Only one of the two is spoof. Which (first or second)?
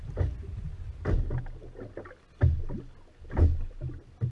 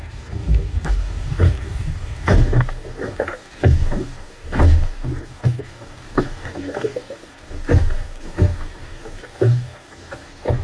second